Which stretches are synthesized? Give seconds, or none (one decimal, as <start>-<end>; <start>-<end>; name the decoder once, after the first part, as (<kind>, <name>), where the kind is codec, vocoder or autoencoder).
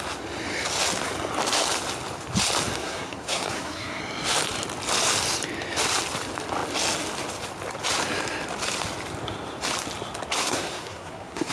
2.8-4.0 (codec, SNAC); 10.4-11.5